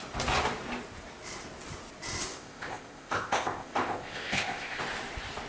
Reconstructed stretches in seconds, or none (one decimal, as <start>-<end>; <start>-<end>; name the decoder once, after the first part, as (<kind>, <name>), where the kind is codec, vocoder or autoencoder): 2.3-4.8 (codec, ZipCodec)